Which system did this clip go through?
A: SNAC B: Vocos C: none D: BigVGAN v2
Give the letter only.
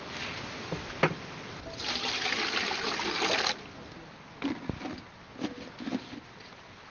C